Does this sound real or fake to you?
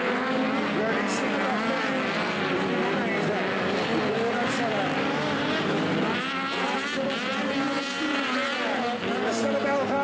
real